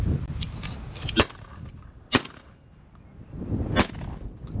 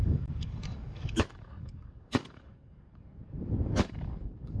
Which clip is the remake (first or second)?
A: second